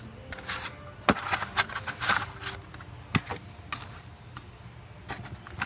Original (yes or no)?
yes